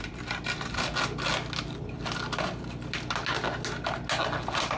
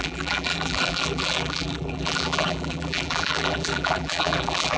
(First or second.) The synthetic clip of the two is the second